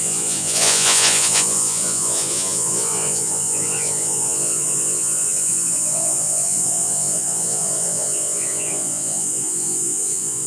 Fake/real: fake